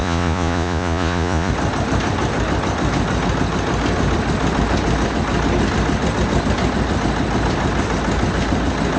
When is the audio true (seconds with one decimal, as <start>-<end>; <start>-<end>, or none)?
1.5-9.0